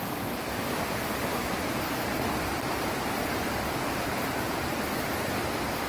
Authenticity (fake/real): real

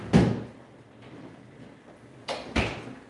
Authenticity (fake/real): real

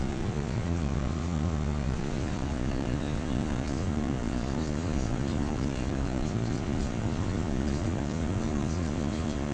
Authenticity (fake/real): fake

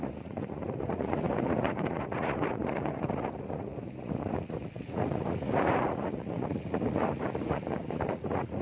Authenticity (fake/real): fake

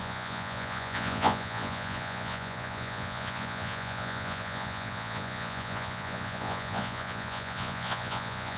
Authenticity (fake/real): fake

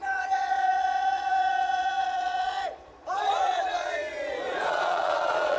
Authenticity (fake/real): fake